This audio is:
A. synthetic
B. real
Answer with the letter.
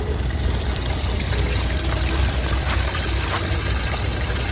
A